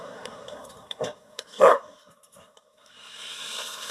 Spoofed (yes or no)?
yes